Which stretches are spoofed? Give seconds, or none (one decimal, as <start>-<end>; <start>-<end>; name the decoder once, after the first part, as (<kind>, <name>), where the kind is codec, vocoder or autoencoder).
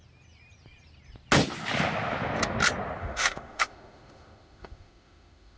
3.0-5.6 (autoencoder, DAC-VAE)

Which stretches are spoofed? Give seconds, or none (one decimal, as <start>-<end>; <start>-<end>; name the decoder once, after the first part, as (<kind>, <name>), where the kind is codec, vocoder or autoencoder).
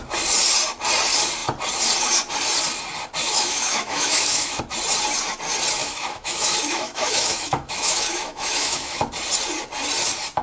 3.2-4.6 (autoencoder, DAC-VAE); 5.8-9.0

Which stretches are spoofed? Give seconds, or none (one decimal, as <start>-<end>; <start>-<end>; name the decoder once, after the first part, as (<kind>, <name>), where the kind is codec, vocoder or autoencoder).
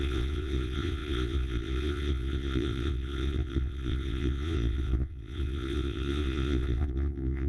0.0-7.5 (vocoder, Vocos)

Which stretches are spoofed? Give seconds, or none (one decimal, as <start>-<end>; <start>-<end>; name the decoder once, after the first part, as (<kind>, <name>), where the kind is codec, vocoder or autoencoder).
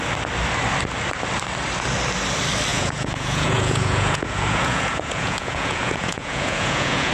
2.7-7.1 (vocoder, Vocos)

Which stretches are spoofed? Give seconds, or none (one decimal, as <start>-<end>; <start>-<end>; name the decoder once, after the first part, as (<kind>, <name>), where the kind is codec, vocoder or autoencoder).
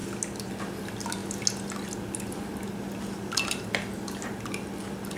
none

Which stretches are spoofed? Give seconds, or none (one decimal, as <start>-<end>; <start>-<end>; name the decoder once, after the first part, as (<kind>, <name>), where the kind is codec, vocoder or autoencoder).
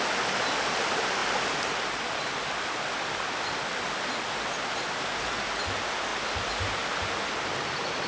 none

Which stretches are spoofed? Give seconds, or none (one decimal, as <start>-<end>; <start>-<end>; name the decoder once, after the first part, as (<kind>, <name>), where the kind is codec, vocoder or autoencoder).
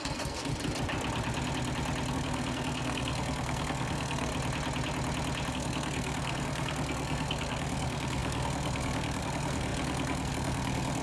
0.0-0.5 (codec, SNAC); 2.1-4.3; 5.5-11.0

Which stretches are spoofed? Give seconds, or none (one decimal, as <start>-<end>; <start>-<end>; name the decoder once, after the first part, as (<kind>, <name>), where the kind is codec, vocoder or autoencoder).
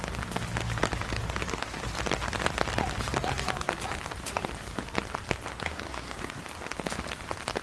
5.5-6.4 (codec, SNAC)